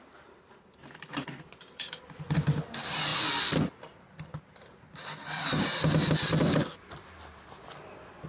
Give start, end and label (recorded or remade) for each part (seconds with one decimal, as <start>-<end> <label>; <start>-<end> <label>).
0.0-8.3 recorded